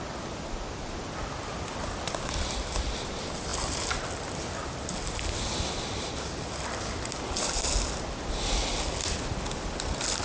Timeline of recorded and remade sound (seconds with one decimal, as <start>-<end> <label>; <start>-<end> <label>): 0.0-10.2 recorded